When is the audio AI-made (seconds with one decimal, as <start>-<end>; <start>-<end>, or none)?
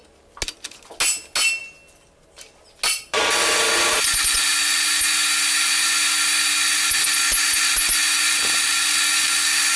none